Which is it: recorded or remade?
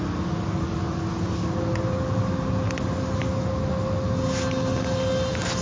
recorded